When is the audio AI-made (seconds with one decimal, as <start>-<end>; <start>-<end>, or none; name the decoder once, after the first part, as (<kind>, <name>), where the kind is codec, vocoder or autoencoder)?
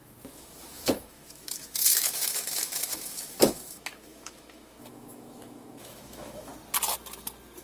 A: 0.0-6.5 (autoencoder, DAC-VAE)